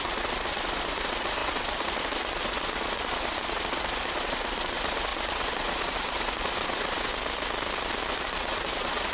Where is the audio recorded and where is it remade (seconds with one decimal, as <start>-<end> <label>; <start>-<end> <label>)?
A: 0.0-7.1 remade; 7.1-8.1 recorded; 8.1-9.1 remade